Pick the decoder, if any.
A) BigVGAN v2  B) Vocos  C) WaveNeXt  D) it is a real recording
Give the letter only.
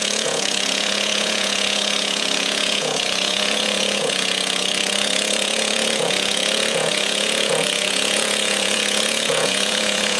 B